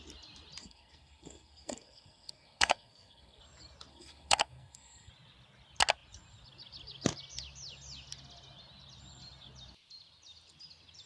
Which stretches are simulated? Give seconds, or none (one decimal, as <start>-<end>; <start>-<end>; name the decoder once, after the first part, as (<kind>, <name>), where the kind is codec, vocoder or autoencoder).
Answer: 0.6-3.4 (codec, SNAC); 3.9-5.1

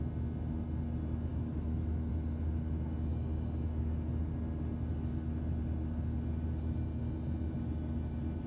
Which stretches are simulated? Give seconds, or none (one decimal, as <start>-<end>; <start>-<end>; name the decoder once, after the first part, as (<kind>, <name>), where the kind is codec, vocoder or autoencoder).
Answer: 1.3-2.1 (autoencoder, DAC-VAE)